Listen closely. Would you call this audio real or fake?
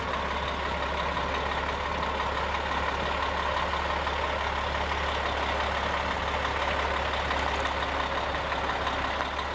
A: real